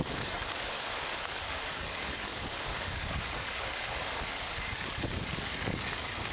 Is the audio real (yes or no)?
no